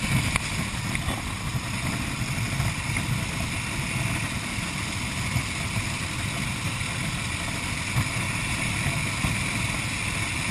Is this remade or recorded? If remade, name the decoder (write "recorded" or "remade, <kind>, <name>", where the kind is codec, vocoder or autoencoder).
recorded